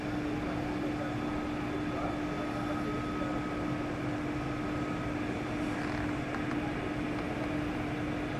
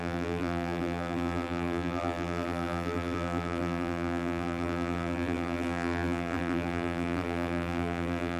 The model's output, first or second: second